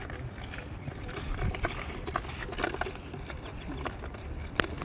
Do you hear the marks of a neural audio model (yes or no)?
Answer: no